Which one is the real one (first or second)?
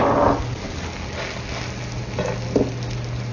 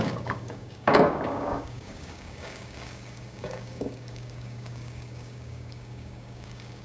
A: first